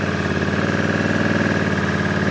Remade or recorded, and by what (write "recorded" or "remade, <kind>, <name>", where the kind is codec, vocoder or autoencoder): recorded